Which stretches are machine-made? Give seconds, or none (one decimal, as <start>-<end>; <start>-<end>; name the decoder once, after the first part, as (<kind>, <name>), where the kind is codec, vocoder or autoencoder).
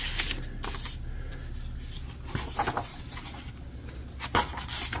2.9-3.5 (vocoder, BigVGAN v2)